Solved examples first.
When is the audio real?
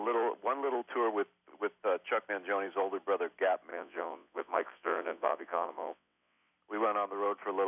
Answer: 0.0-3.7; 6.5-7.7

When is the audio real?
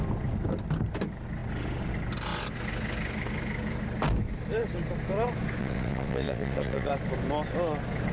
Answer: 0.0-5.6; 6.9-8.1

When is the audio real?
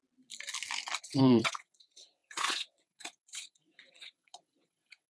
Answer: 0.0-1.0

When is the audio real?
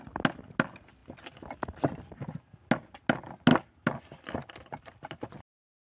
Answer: 0.0-5.9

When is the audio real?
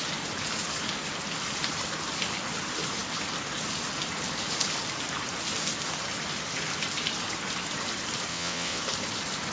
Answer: 0.0-8.3; 8.8-9.5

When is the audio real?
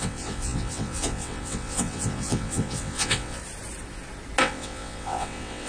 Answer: 3.4-4.4